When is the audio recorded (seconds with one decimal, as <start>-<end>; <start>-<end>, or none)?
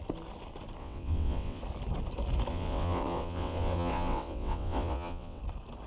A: 0.0-0.8; 1.6-2.5; 5.4-5.9